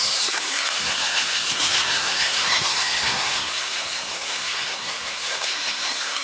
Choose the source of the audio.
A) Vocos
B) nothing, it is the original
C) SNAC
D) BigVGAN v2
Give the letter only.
C